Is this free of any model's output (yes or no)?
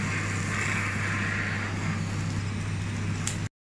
yes